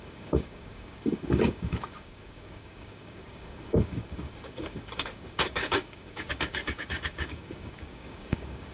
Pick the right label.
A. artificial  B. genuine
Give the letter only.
A